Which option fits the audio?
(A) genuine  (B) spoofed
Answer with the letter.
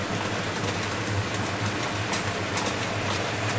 A